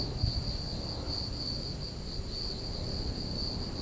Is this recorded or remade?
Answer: recorded